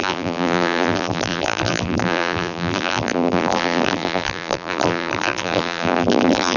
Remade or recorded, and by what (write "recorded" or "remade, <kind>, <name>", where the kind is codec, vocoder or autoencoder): remade, vocoder, BigVGAN v2